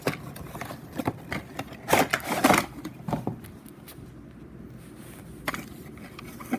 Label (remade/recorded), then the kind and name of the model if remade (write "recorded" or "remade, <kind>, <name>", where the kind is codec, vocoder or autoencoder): recorded